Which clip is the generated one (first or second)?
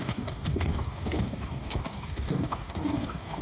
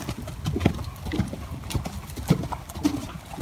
first